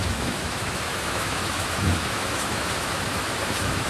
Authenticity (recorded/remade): remade